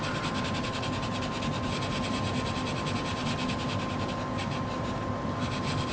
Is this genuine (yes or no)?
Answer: yes